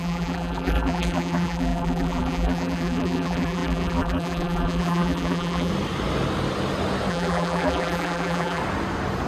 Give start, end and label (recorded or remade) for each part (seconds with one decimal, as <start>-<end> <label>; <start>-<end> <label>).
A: 0.0-5.7 remade; 5.7-7.1 recorded; 7.1-8.6 remade; 8.6-9.3 recorded